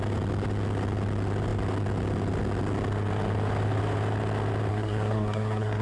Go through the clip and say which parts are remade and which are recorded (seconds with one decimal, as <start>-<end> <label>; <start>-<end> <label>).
0.0-4.7 recorded; 4.7-5.8 remade